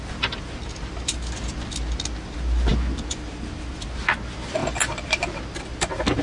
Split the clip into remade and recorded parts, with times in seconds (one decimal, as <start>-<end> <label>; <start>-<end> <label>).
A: 0.0-6.2 remade